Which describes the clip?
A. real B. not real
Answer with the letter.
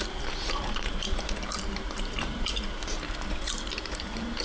B